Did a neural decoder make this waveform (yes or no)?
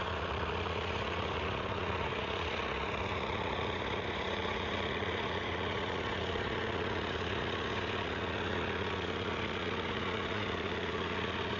yes